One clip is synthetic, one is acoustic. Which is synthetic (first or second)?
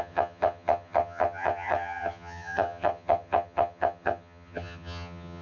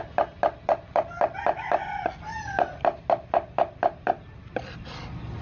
first